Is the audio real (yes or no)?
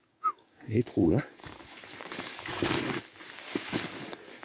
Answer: no